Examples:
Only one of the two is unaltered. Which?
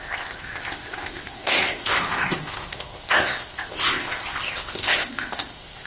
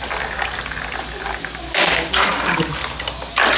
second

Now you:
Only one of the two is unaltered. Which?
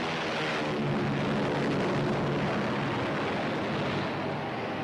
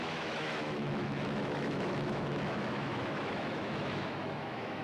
first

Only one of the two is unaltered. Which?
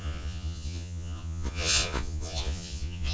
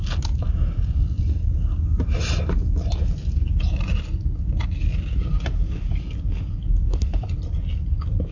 second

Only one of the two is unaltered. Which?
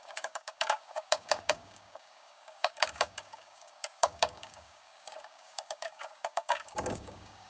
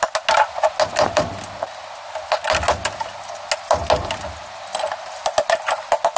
second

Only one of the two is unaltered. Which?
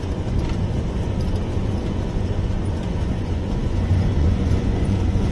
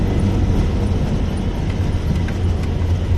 second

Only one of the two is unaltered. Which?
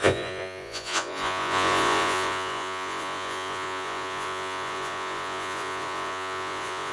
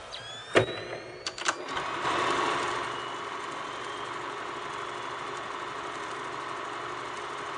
second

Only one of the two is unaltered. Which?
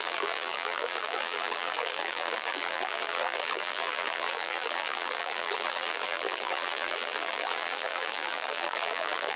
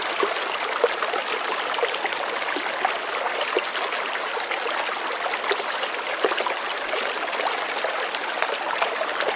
second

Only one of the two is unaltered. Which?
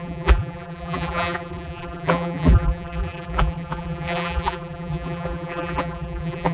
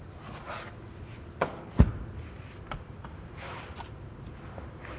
second